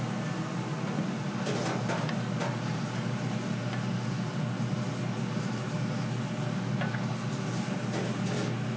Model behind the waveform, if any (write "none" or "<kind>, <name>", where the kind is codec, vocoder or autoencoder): none